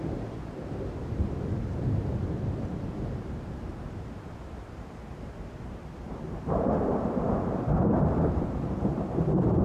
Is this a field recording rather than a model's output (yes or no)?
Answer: no